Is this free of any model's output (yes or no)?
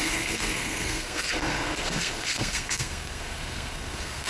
no